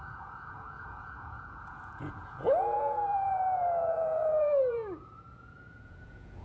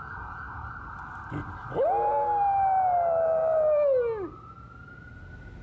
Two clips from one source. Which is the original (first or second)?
second